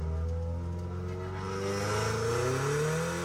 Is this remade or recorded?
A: recorded